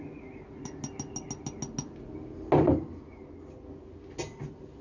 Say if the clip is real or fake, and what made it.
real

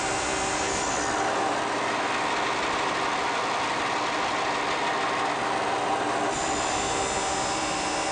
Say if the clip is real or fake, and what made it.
real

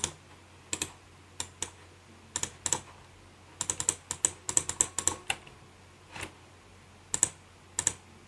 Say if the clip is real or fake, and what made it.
real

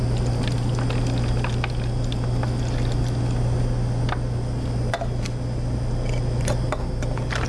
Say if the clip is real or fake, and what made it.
real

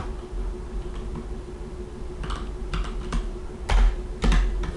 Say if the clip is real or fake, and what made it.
real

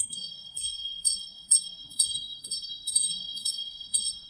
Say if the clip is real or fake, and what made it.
fake, codec, SNAC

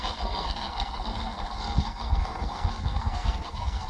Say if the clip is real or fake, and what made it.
fake, codec, SNAC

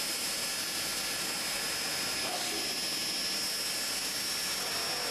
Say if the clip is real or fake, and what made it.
real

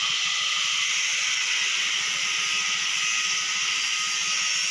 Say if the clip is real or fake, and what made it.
real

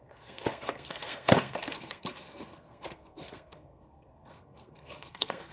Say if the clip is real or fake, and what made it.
fake, codec, SNAC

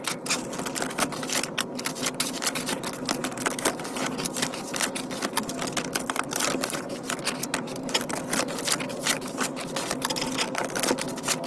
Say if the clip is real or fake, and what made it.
real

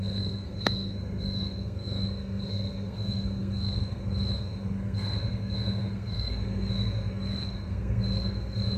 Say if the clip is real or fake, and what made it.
fake, codec, SNAC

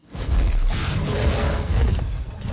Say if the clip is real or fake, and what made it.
fake, codec, SNAC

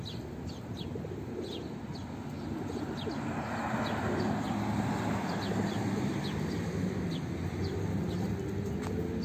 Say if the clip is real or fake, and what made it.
real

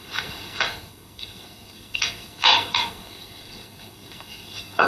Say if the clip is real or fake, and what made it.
fake, codec, SNAC